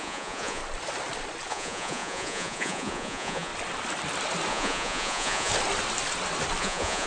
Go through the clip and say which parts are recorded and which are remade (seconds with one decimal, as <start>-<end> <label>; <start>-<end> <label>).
0.0-0.6 remade; 0.6-1.5 recorded; 1.5-3.5 remade; 3.5-4.5 recorded; 4.5-5.5 remade; 5.5-6.6 recorded; 6.6-7.1 remade